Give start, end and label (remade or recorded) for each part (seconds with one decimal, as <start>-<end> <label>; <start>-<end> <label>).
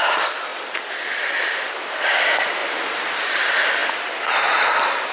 0.0-5.1 recorded